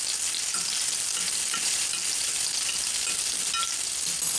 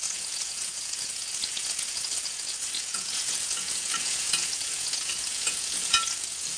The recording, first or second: first